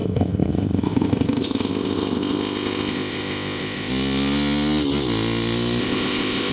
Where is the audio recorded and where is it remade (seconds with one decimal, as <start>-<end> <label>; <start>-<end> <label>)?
0.0-3.9 remade; 3.9-5.8 recorded; 5.8-6.5 remade